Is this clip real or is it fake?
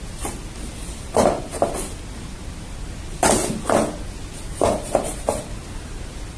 real